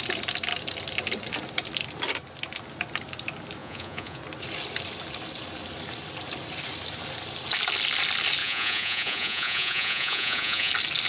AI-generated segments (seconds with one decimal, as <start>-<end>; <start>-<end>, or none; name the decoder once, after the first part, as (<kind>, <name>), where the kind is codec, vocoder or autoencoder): 3.6-4.2 (vocoder, Vocos); 8.4-10.7